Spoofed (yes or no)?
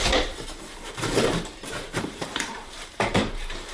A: yes